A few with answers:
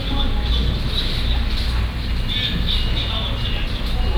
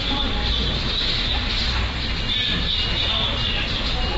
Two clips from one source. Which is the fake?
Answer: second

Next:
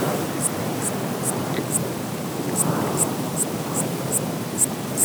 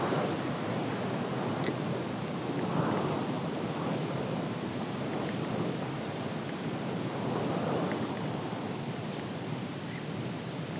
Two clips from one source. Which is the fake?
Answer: first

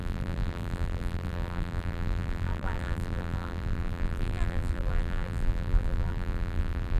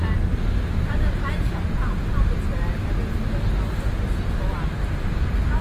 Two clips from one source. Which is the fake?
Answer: first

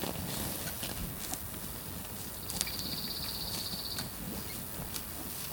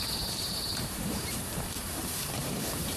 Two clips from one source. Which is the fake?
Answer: second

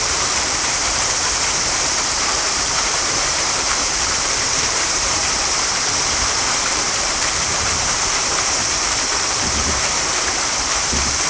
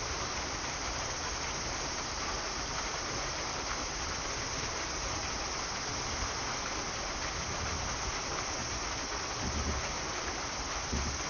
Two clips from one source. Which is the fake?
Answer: first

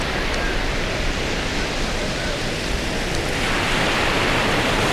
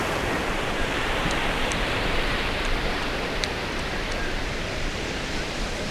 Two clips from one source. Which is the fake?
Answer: second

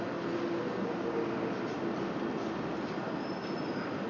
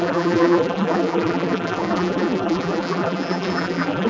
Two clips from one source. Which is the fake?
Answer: second